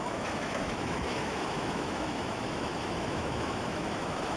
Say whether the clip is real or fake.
fake